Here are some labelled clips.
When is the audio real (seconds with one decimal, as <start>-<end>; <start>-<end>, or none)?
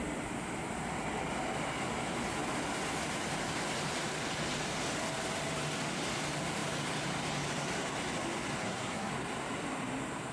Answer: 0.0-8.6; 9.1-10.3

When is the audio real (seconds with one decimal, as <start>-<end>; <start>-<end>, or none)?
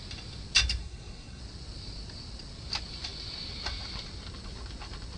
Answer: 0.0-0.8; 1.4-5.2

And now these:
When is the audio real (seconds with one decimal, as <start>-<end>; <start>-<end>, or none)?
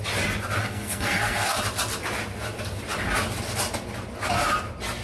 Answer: 0.0-0.6; 1.6-5.0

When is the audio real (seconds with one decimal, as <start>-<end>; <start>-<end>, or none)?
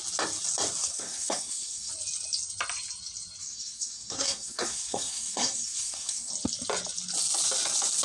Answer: 0.0-0.8; 1.9-3.4; 6.3-8.0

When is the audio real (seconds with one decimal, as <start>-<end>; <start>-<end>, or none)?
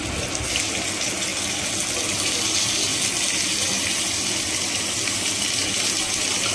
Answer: 0.0-6.5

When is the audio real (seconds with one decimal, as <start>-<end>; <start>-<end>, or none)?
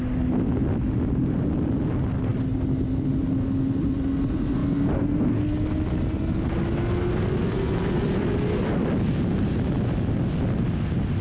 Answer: 0.0-11.2